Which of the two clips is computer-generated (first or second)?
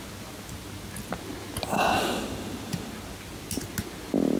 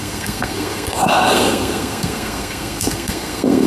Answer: second